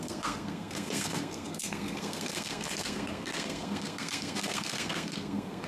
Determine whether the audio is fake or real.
fake